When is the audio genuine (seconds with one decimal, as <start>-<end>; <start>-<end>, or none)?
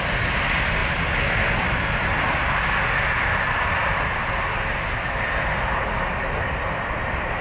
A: 0.0-7.4